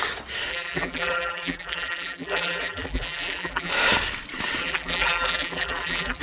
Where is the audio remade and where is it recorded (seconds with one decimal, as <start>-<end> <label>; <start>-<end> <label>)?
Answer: 0.0-0.5 recorded; 0.5-3.7 remade; 3.7-4.6 recorded; 4.6-6.2 remade